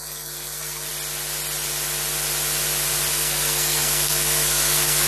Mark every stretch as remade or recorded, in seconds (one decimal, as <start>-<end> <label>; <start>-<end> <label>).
0.0-0.9 remade; 0.9-3.1 recorded; 3.1-5.1 remade